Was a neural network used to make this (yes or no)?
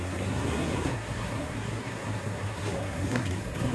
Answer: yes